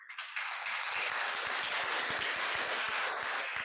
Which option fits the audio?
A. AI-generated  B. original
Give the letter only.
B